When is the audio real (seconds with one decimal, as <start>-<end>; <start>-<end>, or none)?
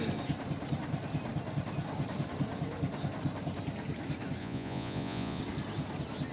0.0-4.4; 5.4-6.3